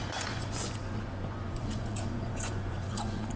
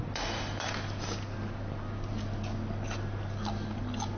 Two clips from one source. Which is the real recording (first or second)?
second